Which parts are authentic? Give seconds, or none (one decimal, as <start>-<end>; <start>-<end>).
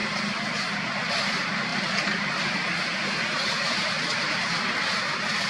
0.0-1.1